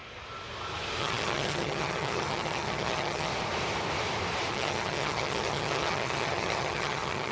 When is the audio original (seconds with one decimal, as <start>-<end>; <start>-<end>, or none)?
0.0-1.0; 3.3-4.5